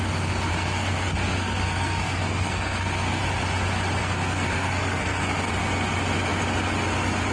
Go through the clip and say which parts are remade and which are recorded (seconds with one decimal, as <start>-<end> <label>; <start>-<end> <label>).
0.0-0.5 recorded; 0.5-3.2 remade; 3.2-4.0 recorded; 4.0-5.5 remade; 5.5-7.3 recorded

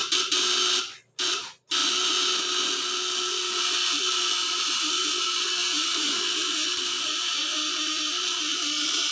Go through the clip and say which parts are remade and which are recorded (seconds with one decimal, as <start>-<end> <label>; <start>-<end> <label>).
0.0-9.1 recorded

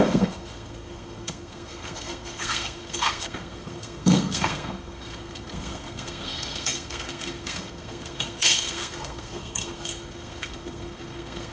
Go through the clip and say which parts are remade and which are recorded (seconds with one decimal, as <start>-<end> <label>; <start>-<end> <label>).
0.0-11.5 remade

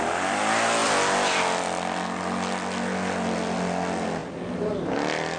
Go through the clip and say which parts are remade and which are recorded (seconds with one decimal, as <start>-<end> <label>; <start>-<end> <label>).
0.0-5.4 recorded